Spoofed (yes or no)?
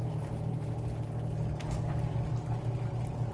no